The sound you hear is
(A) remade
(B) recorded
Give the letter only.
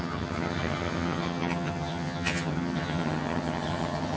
A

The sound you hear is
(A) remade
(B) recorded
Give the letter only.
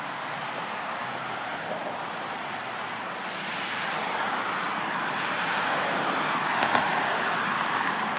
B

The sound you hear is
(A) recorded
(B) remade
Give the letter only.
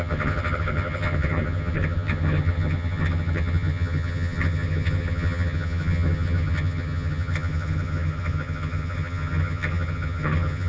B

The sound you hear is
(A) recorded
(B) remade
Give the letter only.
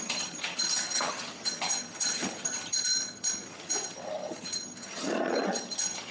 B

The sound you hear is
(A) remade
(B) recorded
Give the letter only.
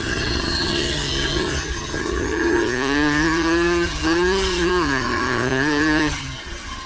A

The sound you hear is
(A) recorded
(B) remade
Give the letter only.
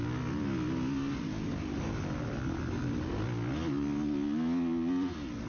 A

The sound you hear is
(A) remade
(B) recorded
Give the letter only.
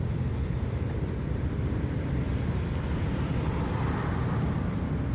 B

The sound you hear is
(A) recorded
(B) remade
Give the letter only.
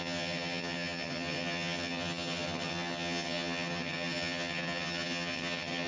B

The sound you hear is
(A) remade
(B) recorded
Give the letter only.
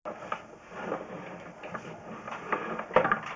B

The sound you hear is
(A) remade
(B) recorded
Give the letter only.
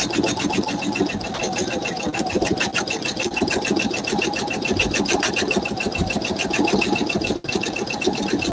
B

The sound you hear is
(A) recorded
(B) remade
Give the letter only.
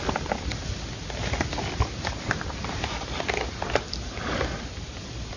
A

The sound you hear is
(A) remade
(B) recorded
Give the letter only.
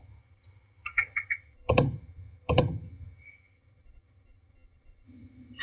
A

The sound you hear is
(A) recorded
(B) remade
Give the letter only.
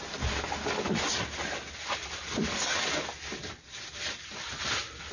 A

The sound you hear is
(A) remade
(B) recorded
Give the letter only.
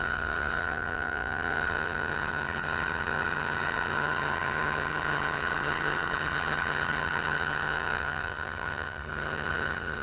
A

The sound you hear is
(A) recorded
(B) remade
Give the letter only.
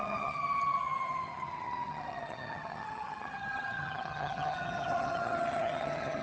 B